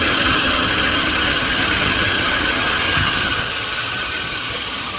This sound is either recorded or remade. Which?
remade